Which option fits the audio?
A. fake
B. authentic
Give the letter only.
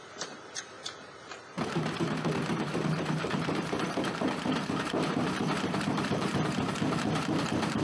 A